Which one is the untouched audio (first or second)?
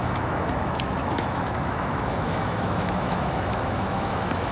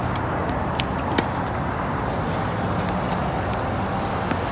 second